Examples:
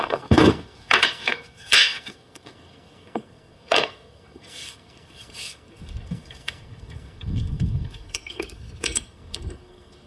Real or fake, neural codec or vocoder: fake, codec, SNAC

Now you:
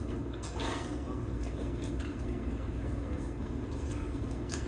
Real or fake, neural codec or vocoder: fake, codec, SNAC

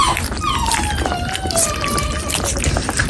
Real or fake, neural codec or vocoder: real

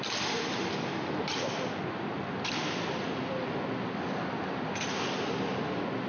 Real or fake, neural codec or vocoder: real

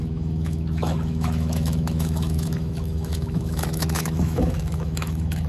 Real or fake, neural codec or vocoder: fake, autoencoder, DAC-VAE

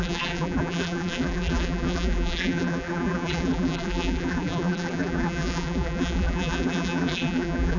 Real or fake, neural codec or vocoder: fake, vocoder, BigVGAN v2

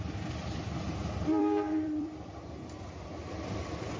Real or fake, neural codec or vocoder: fake, vocoder, BigVGAN v2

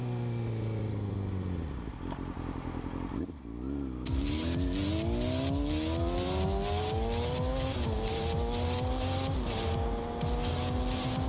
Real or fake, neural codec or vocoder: real